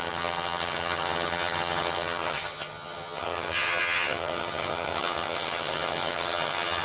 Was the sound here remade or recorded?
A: remade